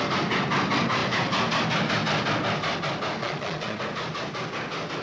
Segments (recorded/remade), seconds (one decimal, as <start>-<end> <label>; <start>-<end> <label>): 0.0-3.2 recorded; 3.2-3.8 remade; 3.8-5.0 recorded